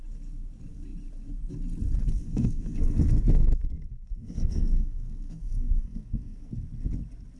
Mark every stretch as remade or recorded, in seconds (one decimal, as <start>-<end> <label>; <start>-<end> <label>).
0.0-2.2 recorded; 2.2-6.6 remade; 6.6-7.4 recorded